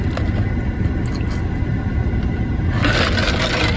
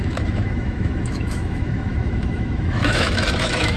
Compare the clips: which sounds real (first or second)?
first